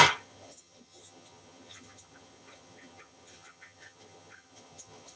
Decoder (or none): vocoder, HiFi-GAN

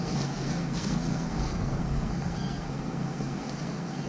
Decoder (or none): codec, SNAC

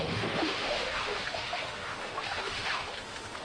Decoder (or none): autoencoder, DAC-VAE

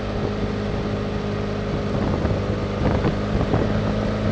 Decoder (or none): none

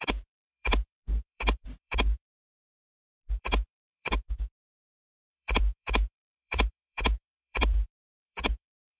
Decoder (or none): vocoder, BigVGAN v2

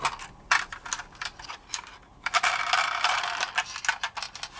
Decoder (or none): none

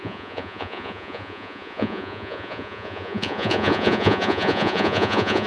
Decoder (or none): vocoder, Vocos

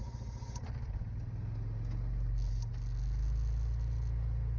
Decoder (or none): none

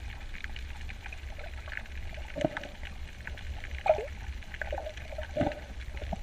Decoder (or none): none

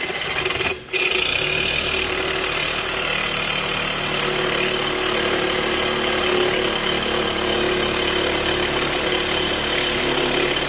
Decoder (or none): none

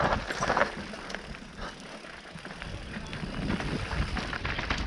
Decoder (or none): none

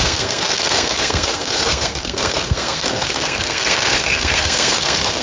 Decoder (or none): codec, SNAC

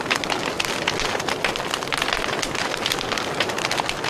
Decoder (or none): none